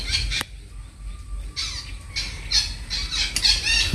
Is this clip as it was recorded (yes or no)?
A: yes